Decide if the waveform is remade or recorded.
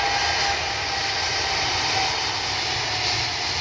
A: recorded